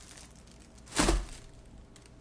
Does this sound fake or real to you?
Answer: real